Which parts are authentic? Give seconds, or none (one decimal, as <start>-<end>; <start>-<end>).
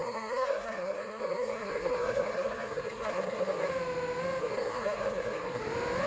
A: 3.7-4.4; 5.6-6.1